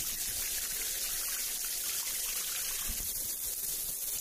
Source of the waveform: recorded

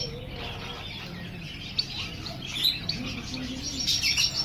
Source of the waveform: recorded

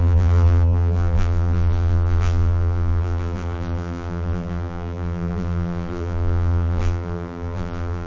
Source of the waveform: remade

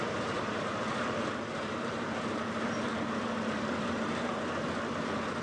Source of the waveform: remade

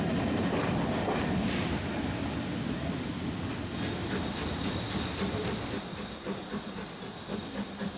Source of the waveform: recorded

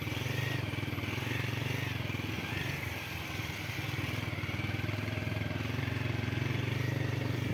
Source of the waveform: recorded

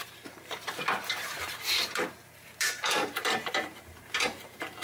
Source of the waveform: remade